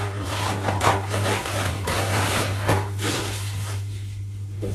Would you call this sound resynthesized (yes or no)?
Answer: yes